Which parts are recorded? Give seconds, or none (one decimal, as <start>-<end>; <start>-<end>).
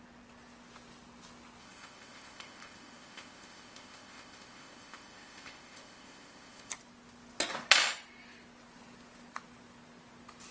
0.0-1.6; 6.7-10.5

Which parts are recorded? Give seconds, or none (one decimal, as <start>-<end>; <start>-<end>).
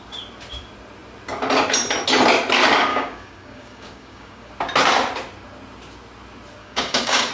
0.0-2.9; 4.5-6.6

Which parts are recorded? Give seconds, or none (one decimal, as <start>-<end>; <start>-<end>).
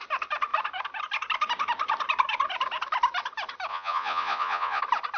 0.0-3.7; 4.8-5.2